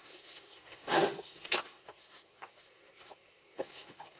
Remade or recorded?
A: remade